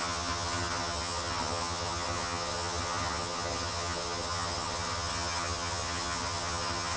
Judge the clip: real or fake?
fake